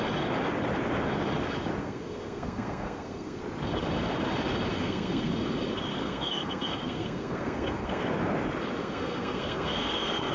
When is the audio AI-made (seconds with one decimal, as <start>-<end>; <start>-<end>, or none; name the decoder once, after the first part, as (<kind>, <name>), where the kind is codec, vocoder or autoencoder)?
1.8-3.4 (codec, SNAC); 4.7-5.3; 5.9-8.0; 8.8-10.3